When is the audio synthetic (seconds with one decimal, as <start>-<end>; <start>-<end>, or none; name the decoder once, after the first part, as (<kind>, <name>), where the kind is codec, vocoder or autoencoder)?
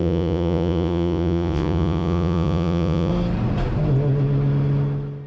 0.0-3.1 (vocoder, Vocos)